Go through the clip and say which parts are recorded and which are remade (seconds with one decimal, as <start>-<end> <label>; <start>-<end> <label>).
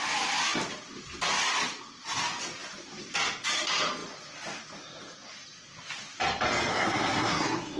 0.0-6.7 recorded; 6.7-7.8 remade